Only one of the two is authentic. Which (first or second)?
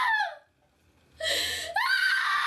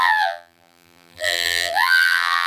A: first